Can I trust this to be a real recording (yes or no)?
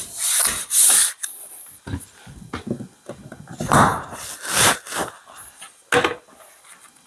yes